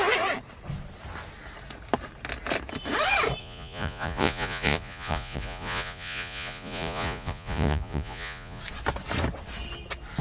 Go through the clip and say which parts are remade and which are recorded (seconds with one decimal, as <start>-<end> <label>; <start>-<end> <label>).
0.0-3.4 recorded; 3.4-8.6 remade; 8.6-10.2 recorded

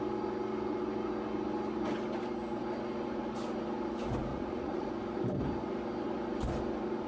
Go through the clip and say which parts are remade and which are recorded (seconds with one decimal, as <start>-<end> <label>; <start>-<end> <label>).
0.0-4.3 recorded; 4.3-4.9 remade; 4.9-7.1 recorded

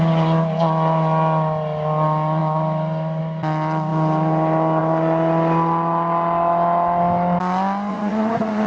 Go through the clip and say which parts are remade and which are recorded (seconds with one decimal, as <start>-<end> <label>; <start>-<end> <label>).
0.0-7.9 recorded; 7.9-8.7 remade

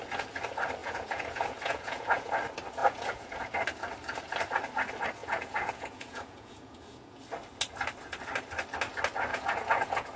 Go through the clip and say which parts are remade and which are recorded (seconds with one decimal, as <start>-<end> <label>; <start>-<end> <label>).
0.0-0.8 recorded; 0.8-2.3 remade; 2.3-2.8 recorded; 2.8-3.5 remade; 3.5-5.2 recorded; 5.2-7.2 remade; 7.2-9.3 recorded; 9.3-10.2 remade

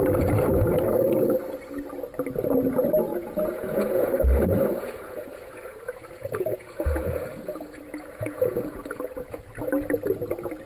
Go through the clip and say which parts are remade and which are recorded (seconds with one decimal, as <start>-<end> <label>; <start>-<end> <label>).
0.0-3.1 recorded; 3.1-4.1 remade; 4.1-4.7 recorded; 4.7-9.5 remade; 9.5-10.7 recorded

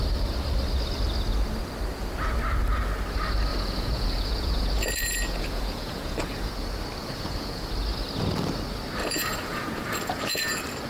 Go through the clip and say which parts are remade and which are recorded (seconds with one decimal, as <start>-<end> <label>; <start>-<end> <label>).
0.0-3.5 recorded; 3.5-6.5 remade; 6.5-7.0 recorded; 7.0-7.6 remade; 7.6-9.0 recorded; 9.0-10.5 remade; 10.5-10.9 recorded